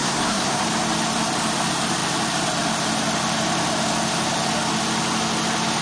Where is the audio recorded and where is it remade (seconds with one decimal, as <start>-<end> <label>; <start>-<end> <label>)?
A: 0.0-0.6 remade; 0.6-5.8 recorded